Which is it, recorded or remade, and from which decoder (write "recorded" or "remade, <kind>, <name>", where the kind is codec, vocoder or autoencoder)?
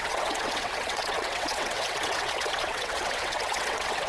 remade, vocoder, WaveNeXt